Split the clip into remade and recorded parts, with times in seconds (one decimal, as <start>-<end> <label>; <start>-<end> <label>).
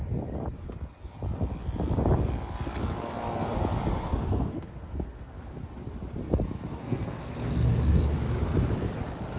0.0-3.9 recorded; 3.9-5.6 remade; 5.6-6.7 recorded; 6.7-7.5 remade; 7.5-9.4 recorded